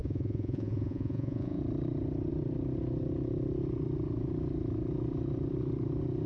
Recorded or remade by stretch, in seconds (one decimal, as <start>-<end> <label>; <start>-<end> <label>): 0.0-1.6 remade; 1.6-6.3 recorded